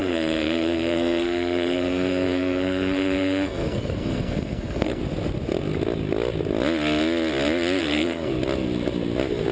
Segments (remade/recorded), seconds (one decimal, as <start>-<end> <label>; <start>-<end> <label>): 0.0-5.0 remade; 5.0-7.8 recorded; 7.8-8.3 remade; 8.3-9.5 recorded